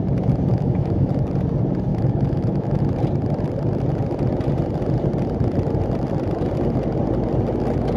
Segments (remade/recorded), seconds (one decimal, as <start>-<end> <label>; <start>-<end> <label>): 0.0-0.5 recorded; 0.5-1.1 remade; 1.1-1.9 recorded; 1.9-2.8 remade; 2.8-8.0 recorded